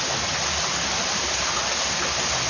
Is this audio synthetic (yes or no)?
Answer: no